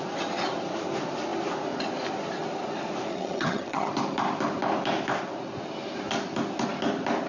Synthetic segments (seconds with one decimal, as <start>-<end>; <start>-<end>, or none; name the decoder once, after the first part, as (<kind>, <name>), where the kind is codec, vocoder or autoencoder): 3.1-3.9 (vocoder, HiFi-GAN)